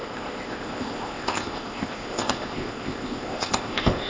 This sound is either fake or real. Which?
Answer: fake